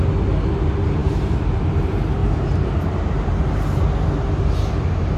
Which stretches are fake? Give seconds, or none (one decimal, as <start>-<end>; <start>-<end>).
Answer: 1.0-1.6; 2.2-3.3